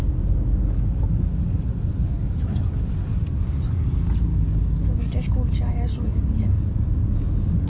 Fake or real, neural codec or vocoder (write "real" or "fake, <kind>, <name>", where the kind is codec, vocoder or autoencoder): real